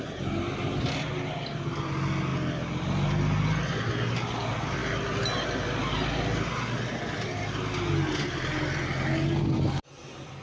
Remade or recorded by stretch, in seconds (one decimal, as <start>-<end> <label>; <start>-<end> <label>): 0.0-10.4 recorded